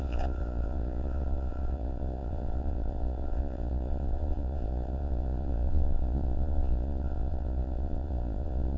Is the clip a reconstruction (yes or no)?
yes